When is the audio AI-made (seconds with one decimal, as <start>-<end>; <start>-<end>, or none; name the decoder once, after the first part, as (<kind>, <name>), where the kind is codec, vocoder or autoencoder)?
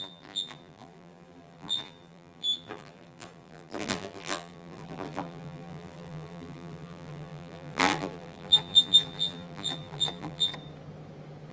0.0-10.5 (vocoder, BigVGAN v2)